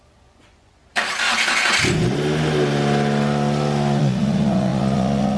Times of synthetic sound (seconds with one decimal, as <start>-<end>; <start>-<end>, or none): 0.0-0.8; 4.0-5.4